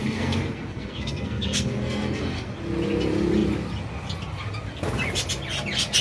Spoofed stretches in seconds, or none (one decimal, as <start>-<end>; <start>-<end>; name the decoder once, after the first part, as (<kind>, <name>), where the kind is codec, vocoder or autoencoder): 0.0-2.5 (codec, SNAC)